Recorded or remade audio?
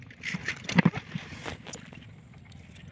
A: recorded